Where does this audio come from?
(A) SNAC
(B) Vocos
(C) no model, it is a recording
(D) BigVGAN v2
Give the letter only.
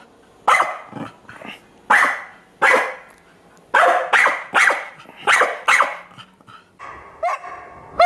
C